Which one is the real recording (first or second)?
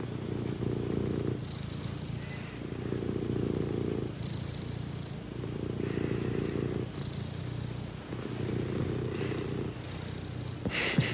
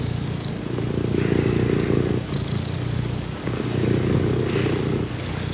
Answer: first